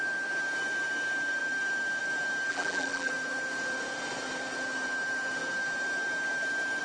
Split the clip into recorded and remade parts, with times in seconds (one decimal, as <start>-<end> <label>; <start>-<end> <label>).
0.0-2.5 recorded; 2.5-3.1 remade; 3.1-6.8 recorded